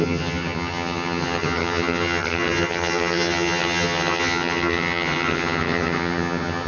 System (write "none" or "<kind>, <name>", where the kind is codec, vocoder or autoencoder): vocoder, HiFi-GAN